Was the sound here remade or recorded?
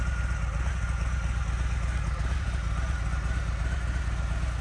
recorded